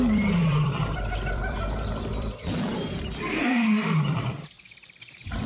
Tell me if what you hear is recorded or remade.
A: remade